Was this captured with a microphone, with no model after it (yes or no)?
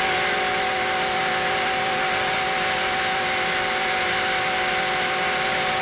yes